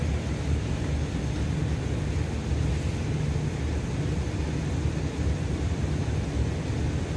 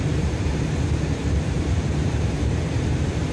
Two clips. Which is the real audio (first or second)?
first